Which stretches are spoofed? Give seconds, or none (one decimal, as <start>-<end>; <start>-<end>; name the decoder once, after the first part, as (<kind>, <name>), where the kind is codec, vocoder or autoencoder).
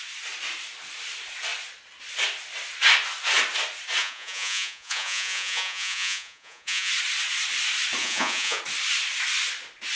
4.0-6.9 (vocoder, Vocos); 8.0-8.6